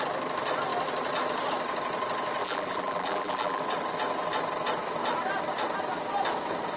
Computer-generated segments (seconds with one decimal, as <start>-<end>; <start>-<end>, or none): 2.4-3.6